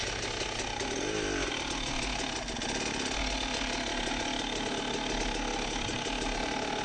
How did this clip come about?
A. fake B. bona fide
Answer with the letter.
B